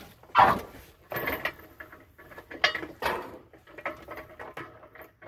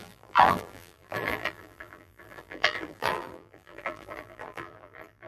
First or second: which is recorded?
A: first